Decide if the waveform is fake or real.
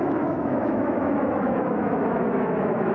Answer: fake